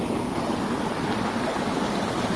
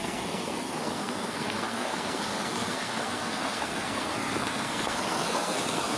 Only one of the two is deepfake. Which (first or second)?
second